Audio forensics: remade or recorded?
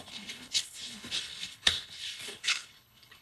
remade